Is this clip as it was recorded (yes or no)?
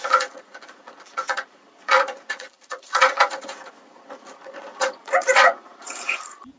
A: no